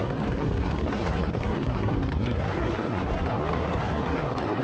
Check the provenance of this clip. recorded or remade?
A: remade